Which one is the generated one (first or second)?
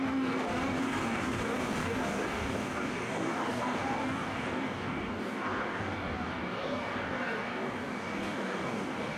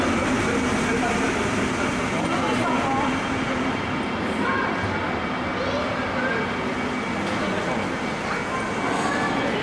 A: first